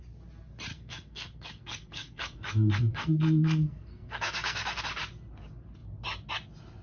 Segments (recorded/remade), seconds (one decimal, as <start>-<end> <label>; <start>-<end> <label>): 0.0-0.7 recorded; 0.7-4.8 remade; 4.8-6.8 recorded